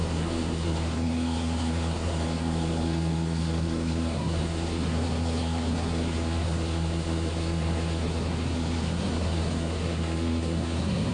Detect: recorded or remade remade